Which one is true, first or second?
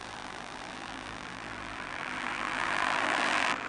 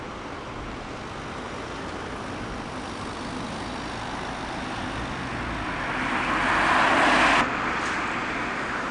second